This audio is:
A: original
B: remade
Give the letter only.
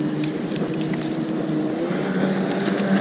A